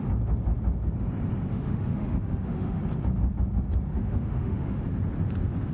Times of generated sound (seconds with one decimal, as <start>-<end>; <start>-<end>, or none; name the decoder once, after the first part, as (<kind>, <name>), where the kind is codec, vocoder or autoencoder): 1.5-2.8 (autoencoder, DAC-VAE); 3.9-4.8